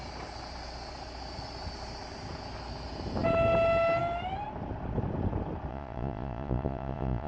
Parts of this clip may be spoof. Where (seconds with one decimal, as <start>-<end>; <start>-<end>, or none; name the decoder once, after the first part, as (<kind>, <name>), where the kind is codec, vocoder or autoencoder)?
5.7-7.3 (vocoder, Vocos)